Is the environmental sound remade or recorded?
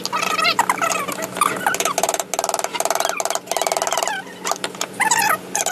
recorded